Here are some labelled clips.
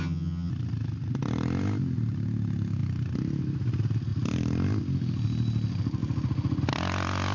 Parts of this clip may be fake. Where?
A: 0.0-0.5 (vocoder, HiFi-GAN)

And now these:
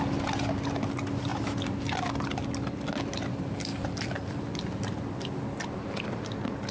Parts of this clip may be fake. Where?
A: none

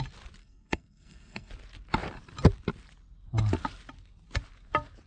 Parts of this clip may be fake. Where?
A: 0.4-1.5 (codec, SNAC)

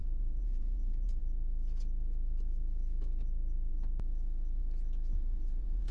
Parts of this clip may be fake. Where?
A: 0.0-1.2 (vocoder, Vocos); 5.1-5.9